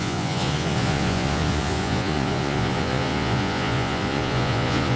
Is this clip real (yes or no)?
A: no